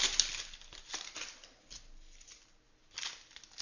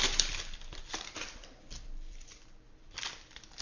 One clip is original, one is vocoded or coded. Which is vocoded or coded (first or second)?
second